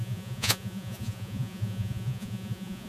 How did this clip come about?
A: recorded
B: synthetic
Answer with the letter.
B